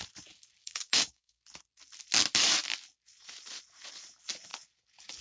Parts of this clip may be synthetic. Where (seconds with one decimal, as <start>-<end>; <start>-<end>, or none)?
0.6-1.4